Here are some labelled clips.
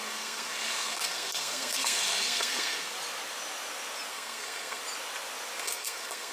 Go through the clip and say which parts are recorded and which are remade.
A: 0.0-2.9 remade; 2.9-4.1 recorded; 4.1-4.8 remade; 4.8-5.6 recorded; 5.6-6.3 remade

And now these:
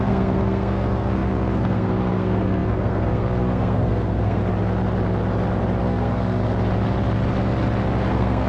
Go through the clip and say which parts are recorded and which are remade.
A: 0.0-4.4 remade; 4.4-5.8 recorded; 5.8-6.4 remade; 6.4-8.1 recorded; 8.1-8.5 remade